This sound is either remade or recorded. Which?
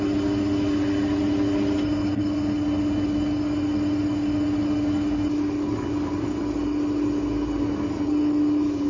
recorded